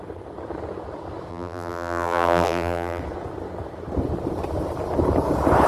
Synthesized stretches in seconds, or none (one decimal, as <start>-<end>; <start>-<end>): 1.3-3.0